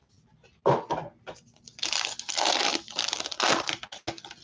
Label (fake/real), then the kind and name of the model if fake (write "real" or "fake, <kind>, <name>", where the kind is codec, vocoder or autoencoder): real